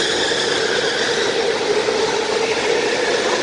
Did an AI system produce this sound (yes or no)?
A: no